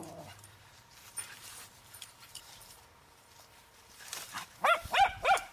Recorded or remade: remade